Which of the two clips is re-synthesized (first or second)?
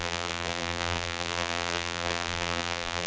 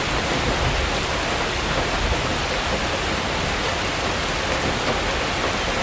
first